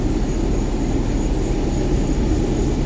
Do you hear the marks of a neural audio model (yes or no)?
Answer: no